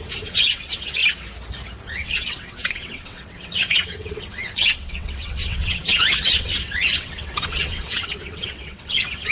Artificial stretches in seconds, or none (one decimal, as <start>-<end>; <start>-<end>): 0.0-1.0; 1.9-9.3